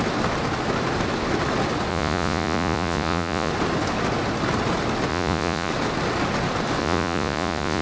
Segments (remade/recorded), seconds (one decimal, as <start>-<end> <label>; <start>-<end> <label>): 0.0-1.9 recorded; 1.9-3.5 remade; 3.5-5.1 recorded; 5.1-5.7 remade; 5.7-6.8 recorded; 6.8-7.8 remade